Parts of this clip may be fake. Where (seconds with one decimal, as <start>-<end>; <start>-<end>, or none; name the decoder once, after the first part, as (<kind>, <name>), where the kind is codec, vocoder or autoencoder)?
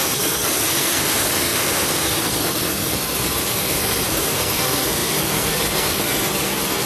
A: 0.0-6.9 (codec, SNAC)